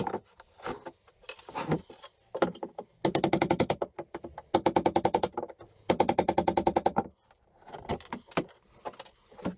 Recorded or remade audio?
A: recorded